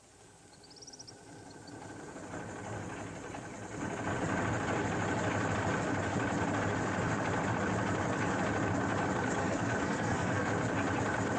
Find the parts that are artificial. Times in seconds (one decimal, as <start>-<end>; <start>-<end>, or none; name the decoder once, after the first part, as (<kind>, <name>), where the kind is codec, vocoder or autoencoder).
9.4-10.5 (codec, SNAC)

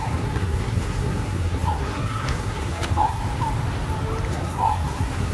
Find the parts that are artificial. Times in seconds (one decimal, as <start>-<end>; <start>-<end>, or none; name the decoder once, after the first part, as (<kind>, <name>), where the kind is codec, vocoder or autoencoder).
0.0-3.2 (codec, SNAC); 4.3-5.3